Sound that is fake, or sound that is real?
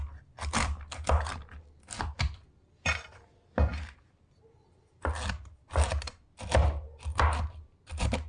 real